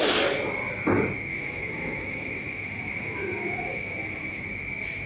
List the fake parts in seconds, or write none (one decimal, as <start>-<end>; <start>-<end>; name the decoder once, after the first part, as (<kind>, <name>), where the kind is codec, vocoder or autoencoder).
1.3-4.4 (autoencoder, DAC-VAE)